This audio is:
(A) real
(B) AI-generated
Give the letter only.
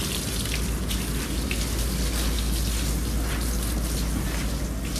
A